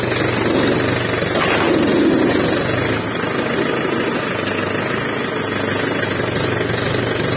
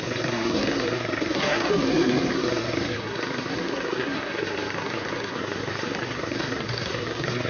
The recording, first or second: first